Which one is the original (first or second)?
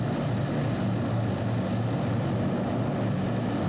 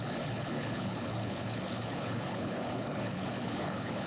first